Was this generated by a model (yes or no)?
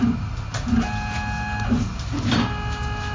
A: no